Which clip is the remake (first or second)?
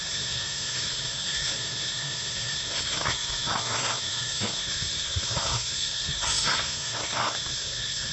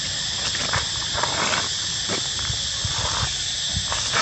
first